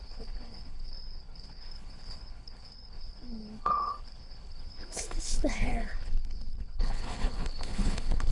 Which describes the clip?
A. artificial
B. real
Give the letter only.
A